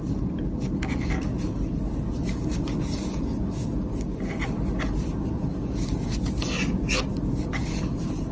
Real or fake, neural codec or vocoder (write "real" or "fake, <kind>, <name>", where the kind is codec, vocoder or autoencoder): real